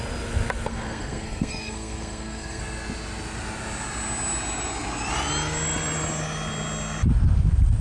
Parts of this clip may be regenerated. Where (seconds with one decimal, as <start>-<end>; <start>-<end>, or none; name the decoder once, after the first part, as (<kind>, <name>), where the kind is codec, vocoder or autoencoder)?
0.7-2.6 (codec, SNAC)